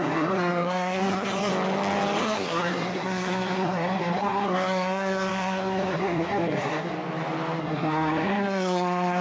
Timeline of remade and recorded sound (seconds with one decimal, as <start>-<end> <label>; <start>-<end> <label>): 0.0-1.5 remade; 1.5-2.2 recorded; 2.2-6.9 remade; 6.9-7.6 recorded; 7.6-9.2 remade